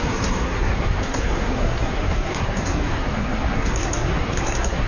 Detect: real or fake fake